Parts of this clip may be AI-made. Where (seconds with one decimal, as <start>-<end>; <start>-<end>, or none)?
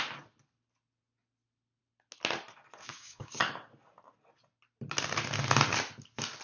2.8-3.4